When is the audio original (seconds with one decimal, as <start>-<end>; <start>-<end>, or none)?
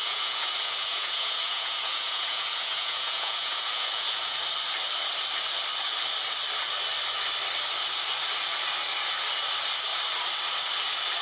4.4-11.2